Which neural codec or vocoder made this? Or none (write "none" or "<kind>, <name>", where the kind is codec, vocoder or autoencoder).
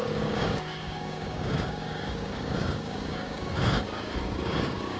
codec, DAC